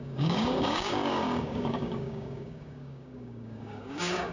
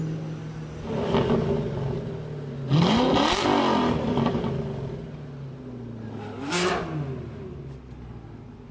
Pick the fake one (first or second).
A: first